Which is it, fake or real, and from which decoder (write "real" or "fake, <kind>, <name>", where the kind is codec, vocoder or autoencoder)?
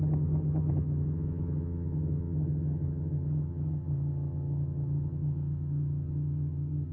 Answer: fake, vocoder, HiFi-GAN